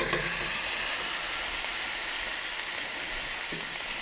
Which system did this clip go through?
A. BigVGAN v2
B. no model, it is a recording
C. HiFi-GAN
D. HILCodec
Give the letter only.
B